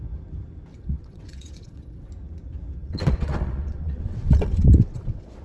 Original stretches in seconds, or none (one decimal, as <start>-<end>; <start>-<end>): 0.0-0.7; 2.1-2.8